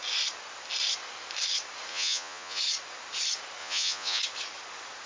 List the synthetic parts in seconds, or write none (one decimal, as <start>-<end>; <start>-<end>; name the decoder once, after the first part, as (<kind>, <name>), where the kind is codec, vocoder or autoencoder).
1.9-2.6 (vocoder, Vocos); 3.6-4.2